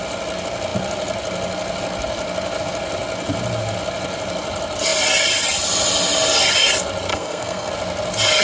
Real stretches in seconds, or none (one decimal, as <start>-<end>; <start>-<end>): 0.0-7.1; 7.7-8.4